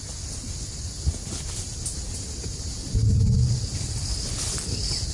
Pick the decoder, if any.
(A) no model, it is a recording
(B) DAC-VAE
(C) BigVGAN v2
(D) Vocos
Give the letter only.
A